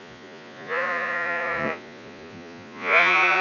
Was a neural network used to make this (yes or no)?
yes